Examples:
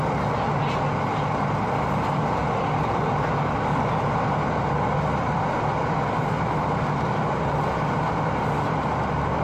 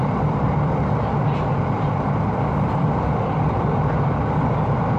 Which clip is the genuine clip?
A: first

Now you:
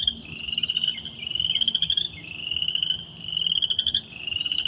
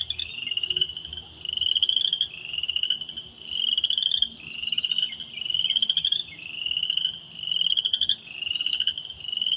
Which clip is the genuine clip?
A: second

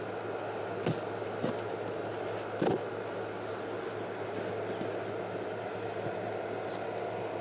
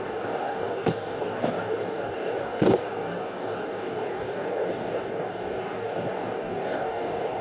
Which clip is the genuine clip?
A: first